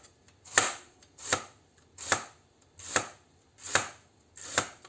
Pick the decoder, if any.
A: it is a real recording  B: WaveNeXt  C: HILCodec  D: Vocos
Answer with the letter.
A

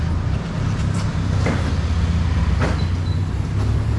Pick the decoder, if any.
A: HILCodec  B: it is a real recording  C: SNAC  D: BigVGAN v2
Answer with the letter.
B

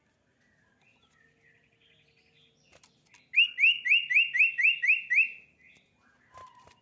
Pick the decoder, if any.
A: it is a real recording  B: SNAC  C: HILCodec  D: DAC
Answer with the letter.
A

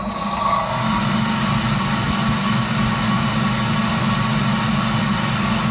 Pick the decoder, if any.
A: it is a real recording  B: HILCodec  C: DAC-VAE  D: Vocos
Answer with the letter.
A